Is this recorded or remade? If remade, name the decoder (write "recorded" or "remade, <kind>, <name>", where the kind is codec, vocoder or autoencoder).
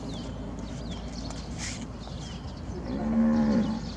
recorded